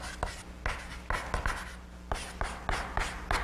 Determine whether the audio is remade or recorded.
recorded